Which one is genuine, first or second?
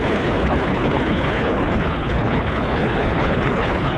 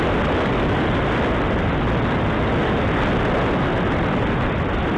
second